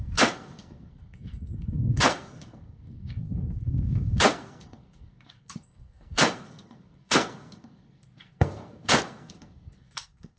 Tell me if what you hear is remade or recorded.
remade